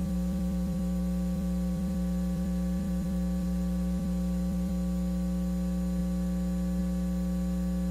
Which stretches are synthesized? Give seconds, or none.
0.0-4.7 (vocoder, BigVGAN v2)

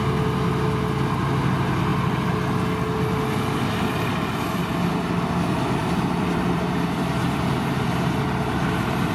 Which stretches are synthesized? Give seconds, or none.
5.8-8.0 (vocoder, BigVGAN v2)

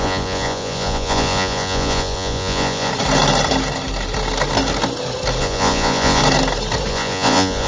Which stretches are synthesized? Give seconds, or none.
0.0-2.9 (vocoder, Vocos); 5.4-6.2; 6.9-7.7

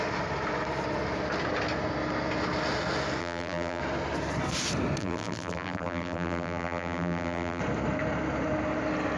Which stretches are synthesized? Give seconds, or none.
3.2-3.8 (vocoder, BigVGAN v2); 5.0-7.6

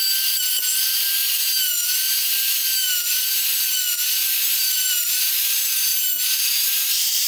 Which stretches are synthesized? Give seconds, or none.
none

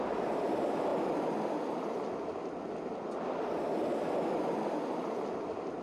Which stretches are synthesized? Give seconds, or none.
none

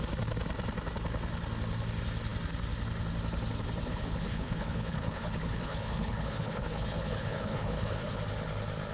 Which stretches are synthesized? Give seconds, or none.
3.9-8.2 (codec, HILCodec)

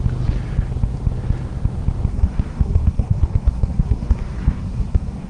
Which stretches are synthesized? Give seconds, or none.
2.1-5.3 (codec, SNAC)